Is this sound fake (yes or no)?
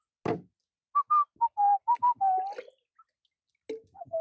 no